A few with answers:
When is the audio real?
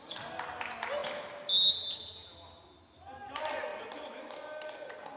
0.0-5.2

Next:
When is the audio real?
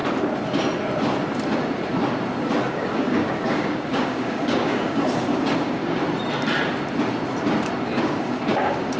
0.0-2.6; 6.0-8.0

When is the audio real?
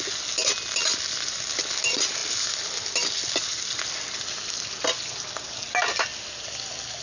0.0-7.0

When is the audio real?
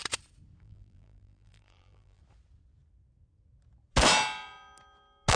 0.0-0.6; 2.2-5.3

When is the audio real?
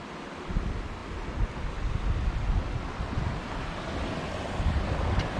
0.0-5.4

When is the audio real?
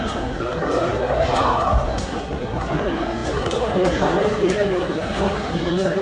none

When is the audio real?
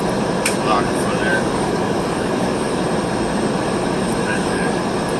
0.0-1.3; 2.8-4.3; 4.8-5.2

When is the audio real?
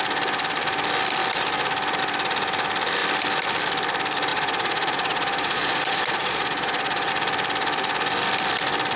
0.0-4.3; 7.1-9.0